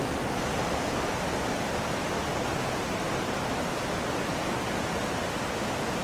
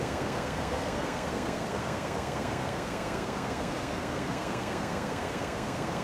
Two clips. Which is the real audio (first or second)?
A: first